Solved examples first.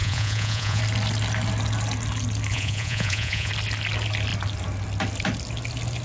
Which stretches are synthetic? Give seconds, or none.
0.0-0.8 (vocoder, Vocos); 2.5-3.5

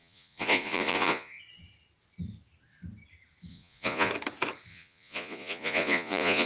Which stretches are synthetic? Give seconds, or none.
0.0-1.4 (vocoder, Vocos); 3.5-4.1; 4.7-6.5

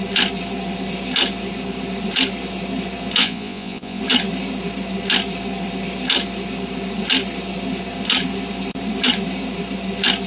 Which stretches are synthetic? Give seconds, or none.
3.2-4.0 (vocoder, Vocos)

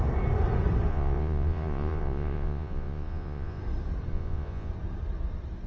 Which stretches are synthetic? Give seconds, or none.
0.9-3.6 (vocoder, Vocos); 4.1-4.7

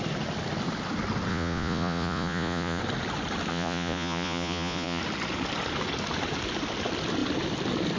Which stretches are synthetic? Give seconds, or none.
1.3-2.8 (vocoder, Vocos); 3.5-5.0